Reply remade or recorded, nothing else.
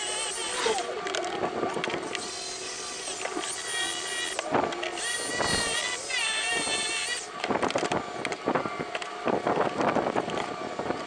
recorded